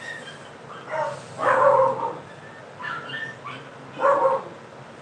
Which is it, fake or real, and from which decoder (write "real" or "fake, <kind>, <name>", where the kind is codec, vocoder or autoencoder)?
real